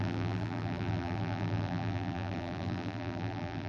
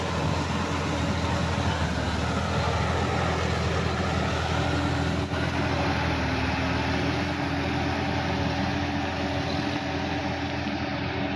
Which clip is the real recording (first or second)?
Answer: second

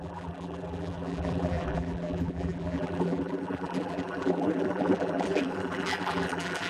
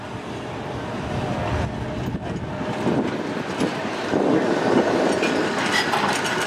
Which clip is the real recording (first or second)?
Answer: second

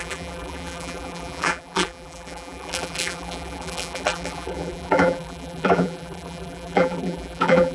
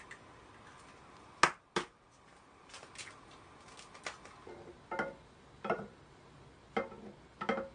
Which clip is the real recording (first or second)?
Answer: second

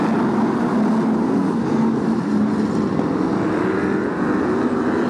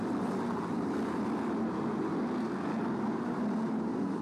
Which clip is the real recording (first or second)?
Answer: first